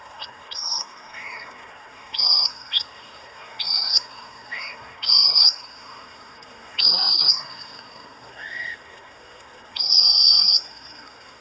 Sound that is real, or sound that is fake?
fake